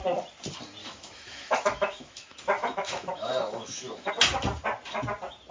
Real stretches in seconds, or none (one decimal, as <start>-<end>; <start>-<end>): 0.0-0.8; 4.1-5.5